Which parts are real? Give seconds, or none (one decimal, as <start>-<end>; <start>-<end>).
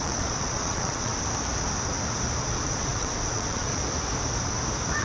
1.1-2.6; 3.8-5.0